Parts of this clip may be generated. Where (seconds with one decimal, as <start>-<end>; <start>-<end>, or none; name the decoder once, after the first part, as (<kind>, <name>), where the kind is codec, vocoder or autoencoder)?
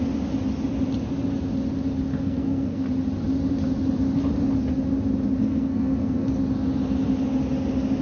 2.1-2.9 (codec, SNAC); 5.4-6.4